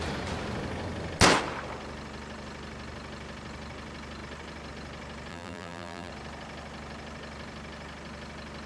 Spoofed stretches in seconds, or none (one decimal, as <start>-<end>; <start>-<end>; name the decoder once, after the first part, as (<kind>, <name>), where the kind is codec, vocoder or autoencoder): 5.3-6.1 (vocoder, BigVGAN v2)